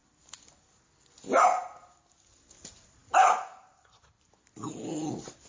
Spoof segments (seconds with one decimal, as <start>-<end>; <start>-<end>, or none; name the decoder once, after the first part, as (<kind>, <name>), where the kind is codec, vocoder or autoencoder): none